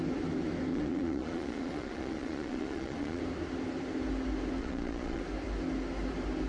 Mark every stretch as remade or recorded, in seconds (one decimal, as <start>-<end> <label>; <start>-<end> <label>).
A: 0.0-0.7 recorded; 0.7-3.2 remade; 3.2-4.6 recorded; 4.6-5.2 remade; 5.2-6.5 recorded